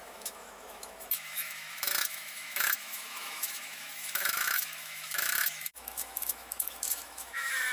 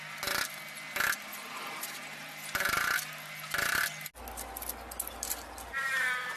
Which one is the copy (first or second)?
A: first